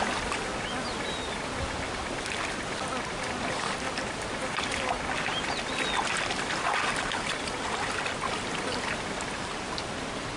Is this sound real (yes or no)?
yes